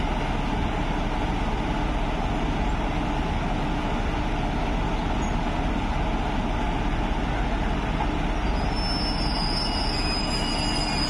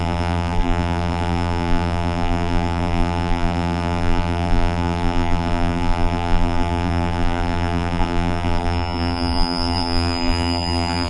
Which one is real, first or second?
first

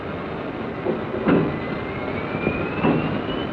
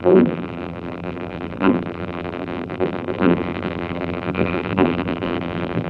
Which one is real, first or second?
first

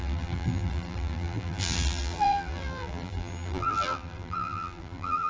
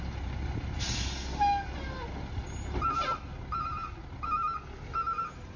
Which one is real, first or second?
second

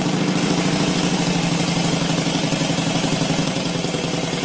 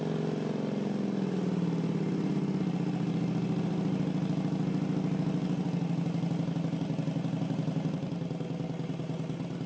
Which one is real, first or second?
second